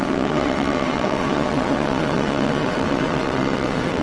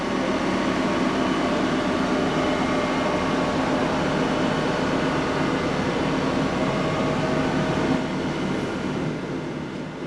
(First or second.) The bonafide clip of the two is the second